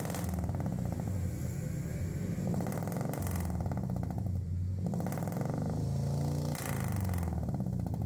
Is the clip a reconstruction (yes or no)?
no